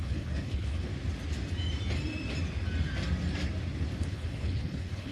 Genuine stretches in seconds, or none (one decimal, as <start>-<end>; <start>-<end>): 0.9-4.0